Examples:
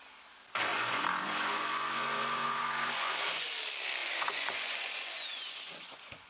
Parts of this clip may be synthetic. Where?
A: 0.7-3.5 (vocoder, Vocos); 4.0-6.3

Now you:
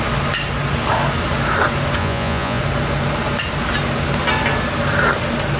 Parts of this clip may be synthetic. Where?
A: 2.0-2.6 (vocoder, Vocos)

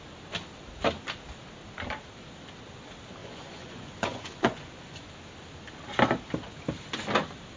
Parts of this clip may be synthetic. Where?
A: 3.2-5.1 (vocoder, Vocos)

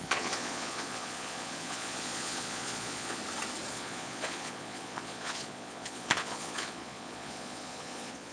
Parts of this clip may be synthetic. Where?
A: 0.0-3.2 (vocoder, Vocos); 3.7-8.3

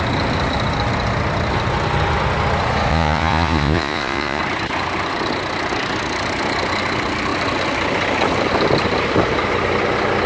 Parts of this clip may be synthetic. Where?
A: 2.9-4.4 (vocoder, Vocos)

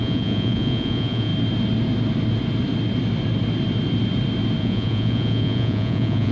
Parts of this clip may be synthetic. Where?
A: 0.0-1.3 (vocoder, Vocos); 4.6-6.3